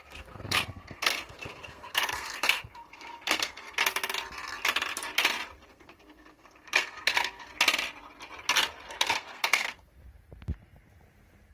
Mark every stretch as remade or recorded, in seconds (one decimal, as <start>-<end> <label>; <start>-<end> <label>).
0.0-3.8 remade; 3.8-5.7 recorded; 5.7-7.5 remade; 7.5-8.9 recorded; 8.9-10.0 remade; 10.0-11.5 recorded